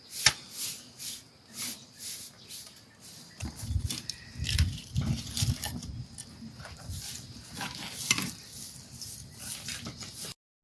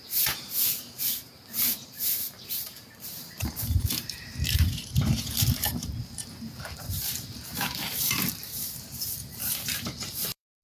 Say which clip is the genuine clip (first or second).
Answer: first